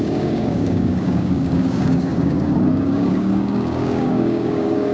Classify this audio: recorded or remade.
remade